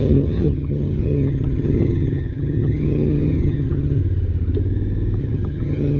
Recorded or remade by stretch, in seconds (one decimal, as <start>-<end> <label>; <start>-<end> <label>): 0.0-4.0 remade; 4.0-5.2 recorded; 5.2-6.0 remade